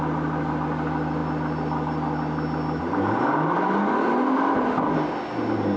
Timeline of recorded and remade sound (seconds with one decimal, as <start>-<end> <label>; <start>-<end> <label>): 0.0-5.8 recorded